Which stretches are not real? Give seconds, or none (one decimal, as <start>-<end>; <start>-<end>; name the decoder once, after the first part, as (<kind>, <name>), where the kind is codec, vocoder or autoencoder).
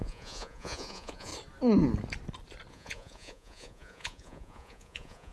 0.0-1.3 (vocoder, Vocos); 2.7-5.3